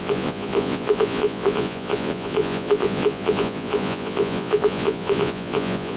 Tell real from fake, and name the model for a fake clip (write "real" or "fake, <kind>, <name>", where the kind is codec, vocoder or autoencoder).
fake, vocoder, Vocos